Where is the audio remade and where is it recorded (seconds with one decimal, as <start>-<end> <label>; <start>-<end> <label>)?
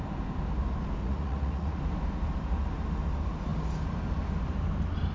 0.0-1.0 recorded; 1.0-1.8 remade; 1.8-5.1 recorded